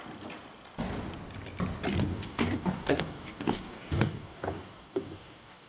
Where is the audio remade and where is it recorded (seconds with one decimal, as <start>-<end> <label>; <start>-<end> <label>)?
0.0-2.1 recorded; 2.1-5.7 remade